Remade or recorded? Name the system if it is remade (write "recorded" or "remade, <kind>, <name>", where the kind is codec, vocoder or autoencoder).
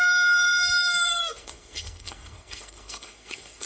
remade, codec, SNAC